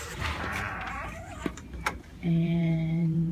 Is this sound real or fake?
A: fake